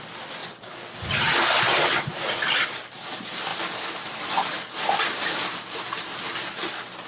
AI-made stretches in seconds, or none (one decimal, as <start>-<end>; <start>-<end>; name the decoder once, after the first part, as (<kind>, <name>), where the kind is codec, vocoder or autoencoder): none